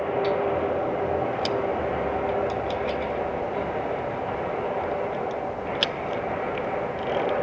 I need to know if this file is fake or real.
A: real